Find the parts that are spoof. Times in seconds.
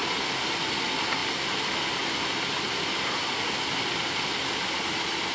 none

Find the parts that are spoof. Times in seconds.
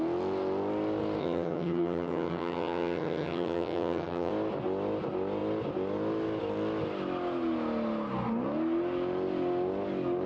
1.2-4.3 (vocoder, HiFi-GAN)